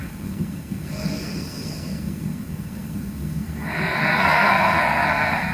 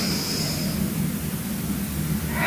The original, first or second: second